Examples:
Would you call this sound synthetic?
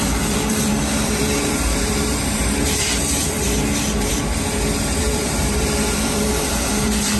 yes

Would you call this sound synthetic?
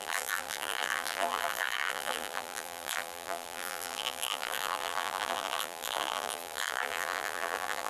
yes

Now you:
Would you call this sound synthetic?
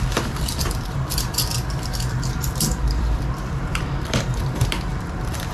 yes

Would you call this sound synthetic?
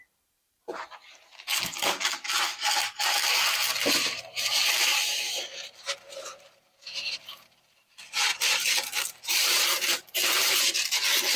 yes